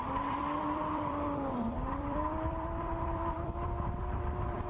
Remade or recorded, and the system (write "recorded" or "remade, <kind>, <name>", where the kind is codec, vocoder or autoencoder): remade, vocoder, BigVGAN v2